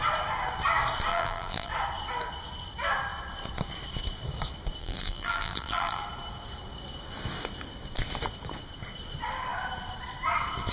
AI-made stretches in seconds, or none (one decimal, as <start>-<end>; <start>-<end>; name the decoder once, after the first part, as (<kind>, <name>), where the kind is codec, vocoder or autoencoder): 1.1-1.7 (vocoder, BigVGAN v2); 4.8-6.0